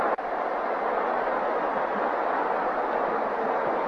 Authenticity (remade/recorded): recorded